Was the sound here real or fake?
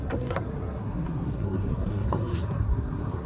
fake